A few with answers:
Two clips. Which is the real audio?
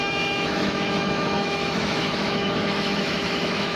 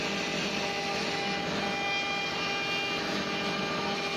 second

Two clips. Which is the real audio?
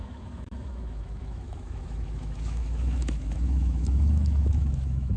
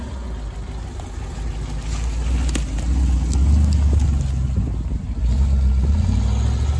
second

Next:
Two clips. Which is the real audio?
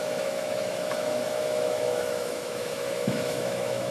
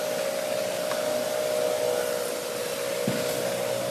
second